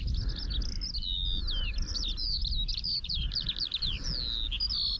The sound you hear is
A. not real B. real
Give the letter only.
B